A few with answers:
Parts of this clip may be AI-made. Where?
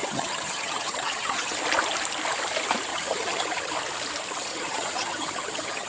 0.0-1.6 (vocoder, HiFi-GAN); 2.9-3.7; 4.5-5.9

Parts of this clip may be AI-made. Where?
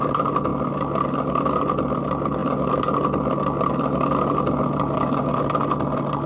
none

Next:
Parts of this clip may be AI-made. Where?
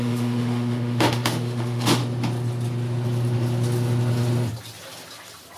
0.0-2.0 (autoencoder, DAC-VAE)